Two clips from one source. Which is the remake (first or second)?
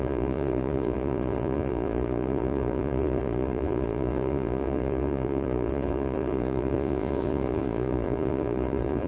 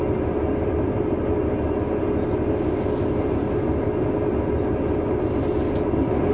first